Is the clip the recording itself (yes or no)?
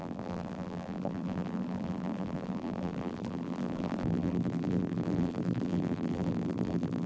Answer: no